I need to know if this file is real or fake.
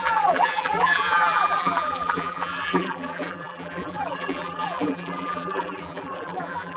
fake